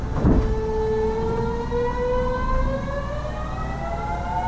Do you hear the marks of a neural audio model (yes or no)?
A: no